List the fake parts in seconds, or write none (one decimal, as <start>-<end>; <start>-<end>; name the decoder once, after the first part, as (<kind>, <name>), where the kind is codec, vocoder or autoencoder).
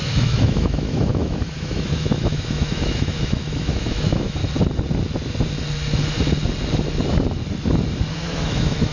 0.0-4.4 (autoencoder, DAC-VAE); 8.1-8.9